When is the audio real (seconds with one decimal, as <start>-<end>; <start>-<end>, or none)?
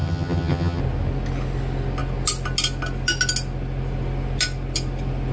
0.8-5.3